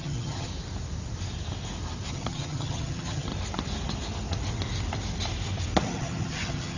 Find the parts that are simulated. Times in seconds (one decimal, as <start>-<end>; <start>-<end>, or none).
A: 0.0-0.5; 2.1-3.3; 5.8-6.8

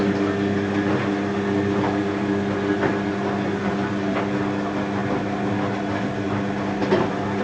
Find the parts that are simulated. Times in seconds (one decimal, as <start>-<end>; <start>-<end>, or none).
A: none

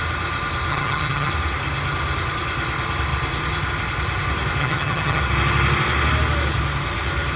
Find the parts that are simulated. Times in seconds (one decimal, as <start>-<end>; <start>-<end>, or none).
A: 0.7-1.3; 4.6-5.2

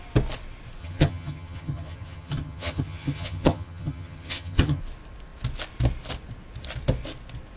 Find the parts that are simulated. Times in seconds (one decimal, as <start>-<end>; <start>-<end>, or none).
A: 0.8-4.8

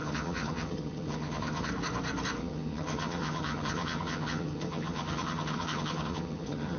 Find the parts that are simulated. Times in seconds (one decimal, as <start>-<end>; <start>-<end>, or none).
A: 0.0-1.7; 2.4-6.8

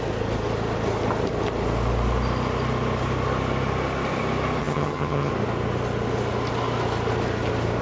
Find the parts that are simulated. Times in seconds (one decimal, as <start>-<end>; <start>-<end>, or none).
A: 4.6-5.3

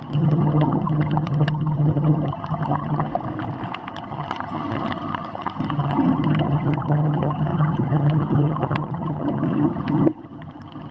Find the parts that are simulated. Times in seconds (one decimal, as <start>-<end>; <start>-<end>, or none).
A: 0.0-3.1; 3.9-10.9